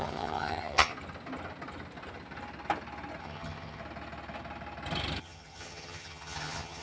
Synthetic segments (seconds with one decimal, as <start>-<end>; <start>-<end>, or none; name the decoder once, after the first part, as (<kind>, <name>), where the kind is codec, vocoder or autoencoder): 0.0-0.9 (vocoder, HiFi-GAN); 3.2-3.8; 5.2-6.8